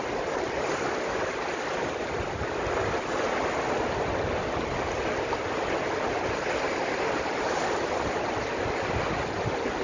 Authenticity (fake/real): real